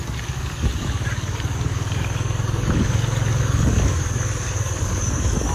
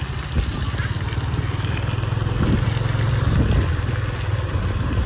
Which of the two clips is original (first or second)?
second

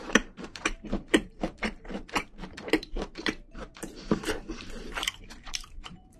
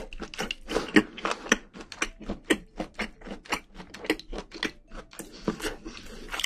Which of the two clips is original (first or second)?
second